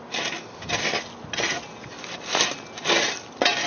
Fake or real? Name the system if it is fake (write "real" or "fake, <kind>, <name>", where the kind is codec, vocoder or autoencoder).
real